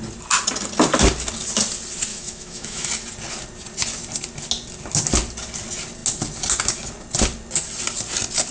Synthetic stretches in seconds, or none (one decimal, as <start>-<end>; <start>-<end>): 2.1-2.9